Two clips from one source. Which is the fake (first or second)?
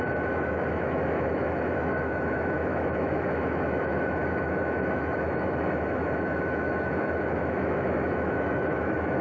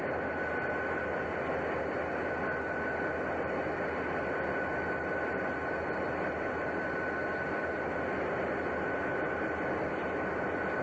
first